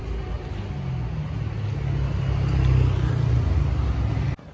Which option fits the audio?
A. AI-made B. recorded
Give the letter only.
B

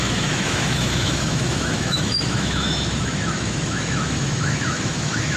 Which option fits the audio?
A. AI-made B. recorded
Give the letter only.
A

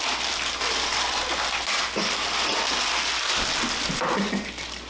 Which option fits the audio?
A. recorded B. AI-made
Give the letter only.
A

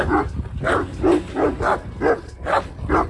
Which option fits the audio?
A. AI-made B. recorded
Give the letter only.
B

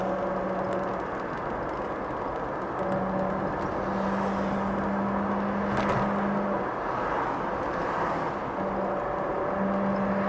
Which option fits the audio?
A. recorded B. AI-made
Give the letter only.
A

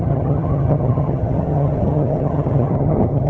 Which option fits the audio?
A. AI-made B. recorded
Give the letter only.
A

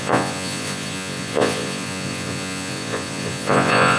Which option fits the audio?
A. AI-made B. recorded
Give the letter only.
A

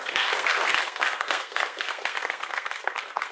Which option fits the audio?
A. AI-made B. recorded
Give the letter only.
A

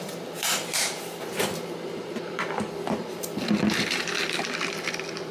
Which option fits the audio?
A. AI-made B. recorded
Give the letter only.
A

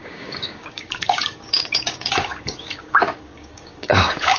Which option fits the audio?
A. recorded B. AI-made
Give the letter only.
B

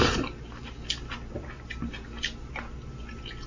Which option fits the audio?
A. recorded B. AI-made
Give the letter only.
A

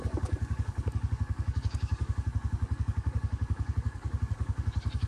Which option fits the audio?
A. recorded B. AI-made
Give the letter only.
B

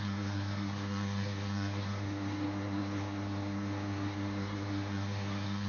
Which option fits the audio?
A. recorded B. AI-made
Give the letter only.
B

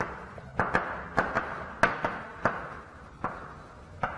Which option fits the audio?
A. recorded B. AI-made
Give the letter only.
A